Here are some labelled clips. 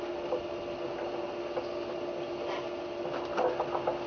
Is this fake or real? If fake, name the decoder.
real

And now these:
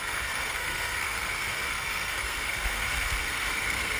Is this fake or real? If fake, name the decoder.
fake, codec, SNAC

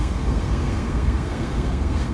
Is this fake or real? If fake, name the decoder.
fake, codec, SNAC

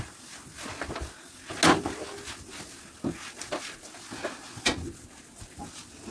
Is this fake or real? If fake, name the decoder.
real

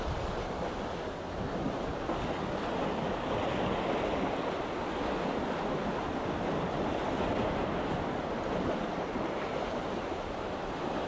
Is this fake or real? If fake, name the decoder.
real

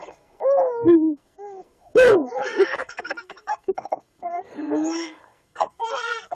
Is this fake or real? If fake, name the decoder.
fake, codec, SNAC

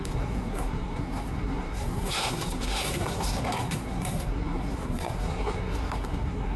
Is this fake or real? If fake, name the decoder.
fake, codec, SNAC